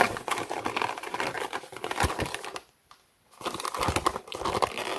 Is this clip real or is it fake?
real